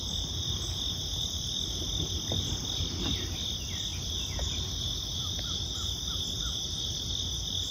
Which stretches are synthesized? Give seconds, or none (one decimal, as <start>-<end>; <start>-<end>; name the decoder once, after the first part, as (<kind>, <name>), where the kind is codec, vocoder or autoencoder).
none